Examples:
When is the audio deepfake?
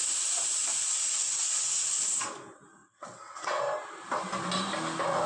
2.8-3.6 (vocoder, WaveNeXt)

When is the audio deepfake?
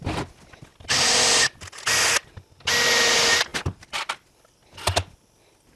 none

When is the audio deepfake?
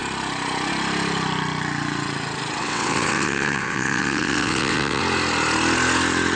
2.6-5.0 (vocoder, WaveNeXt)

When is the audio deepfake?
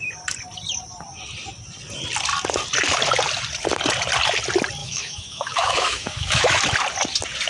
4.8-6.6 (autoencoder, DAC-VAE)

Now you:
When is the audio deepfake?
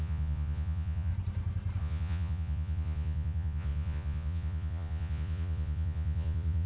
0.0-1.1 (vocoder, Vocos); 1.8-6.7